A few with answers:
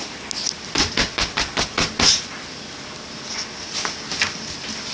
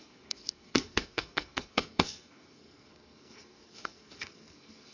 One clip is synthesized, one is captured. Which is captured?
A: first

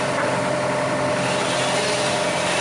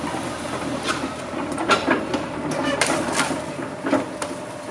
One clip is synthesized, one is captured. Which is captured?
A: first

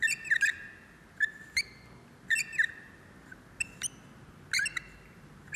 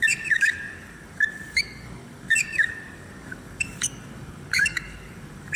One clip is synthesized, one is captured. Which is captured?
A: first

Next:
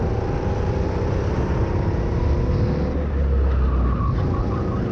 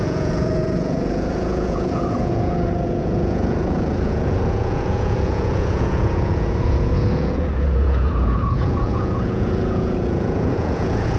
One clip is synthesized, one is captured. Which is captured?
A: first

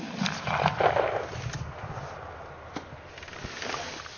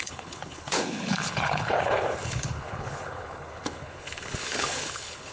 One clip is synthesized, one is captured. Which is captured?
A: first